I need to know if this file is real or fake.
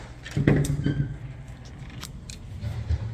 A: real